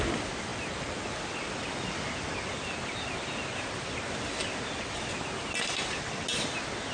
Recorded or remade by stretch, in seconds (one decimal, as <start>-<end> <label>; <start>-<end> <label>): 0.0-6.9 recorded